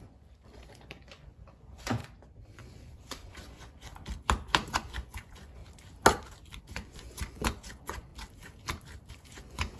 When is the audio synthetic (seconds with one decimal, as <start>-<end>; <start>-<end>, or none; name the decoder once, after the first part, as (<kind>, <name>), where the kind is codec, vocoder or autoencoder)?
0.0-2.0 (vocoder, Vocos); 2.6-3.9; 4.7-5.6; 6.6-8.1; 9.1-9.8